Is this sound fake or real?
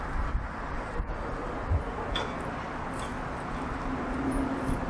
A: real